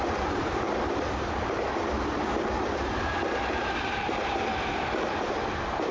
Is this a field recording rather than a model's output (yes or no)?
no